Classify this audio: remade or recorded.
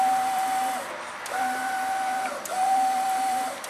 remade